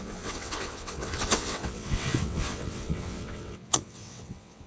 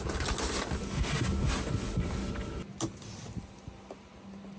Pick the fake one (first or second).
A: first